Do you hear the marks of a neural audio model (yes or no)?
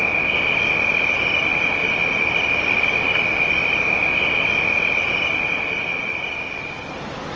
no